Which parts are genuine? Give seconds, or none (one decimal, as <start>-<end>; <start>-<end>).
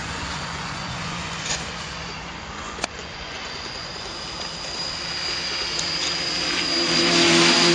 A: 4.1-7.7